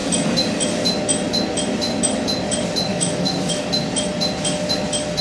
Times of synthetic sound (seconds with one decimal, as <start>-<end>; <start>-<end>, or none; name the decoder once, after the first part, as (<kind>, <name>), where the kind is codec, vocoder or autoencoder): 2.9-3.6 (autoencoder, DAC-VAE)